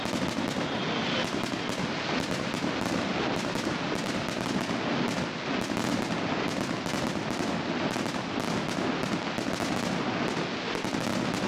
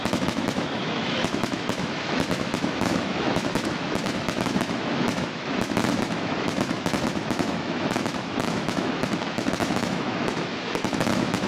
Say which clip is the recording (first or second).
first